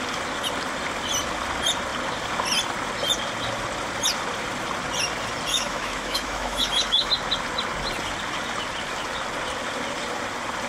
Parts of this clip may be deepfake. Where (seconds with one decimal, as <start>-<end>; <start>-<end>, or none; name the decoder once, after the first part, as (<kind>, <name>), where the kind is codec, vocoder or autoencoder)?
5.5-7.1 (autoencoder, DAC-VAE)